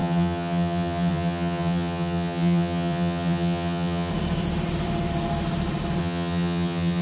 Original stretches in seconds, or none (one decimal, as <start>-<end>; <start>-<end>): 4.1-6.0